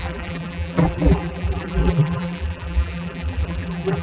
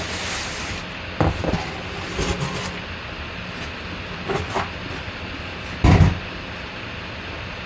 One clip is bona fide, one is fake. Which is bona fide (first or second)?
second